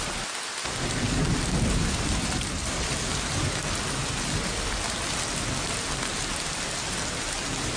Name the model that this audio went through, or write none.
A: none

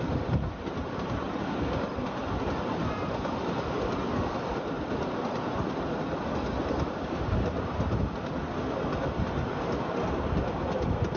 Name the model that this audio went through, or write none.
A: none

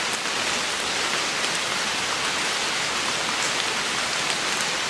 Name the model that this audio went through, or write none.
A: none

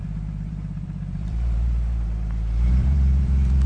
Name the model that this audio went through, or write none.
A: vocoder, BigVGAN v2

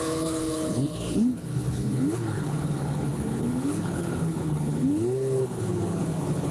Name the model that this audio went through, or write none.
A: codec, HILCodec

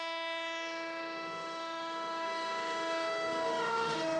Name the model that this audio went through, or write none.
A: autoencoder, DAC-VAE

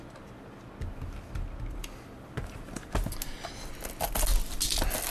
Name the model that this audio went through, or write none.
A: none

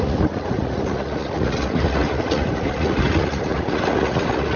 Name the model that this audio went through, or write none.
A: vocoder, Vocos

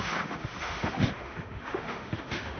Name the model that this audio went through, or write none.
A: autoencoder, DAC-VAE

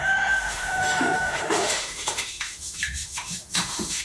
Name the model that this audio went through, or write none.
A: autoencoder, DAC-VAE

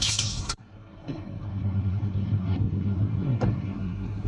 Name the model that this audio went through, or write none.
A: codec, SNAC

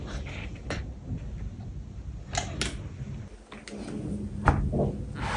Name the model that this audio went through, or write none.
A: none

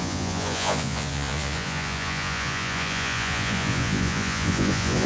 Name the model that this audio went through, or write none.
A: vocoder, Vocos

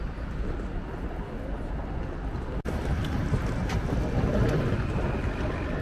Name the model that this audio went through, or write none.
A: none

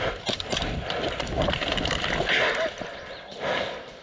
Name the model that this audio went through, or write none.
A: none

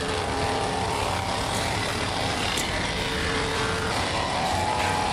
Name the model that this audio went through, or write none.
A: none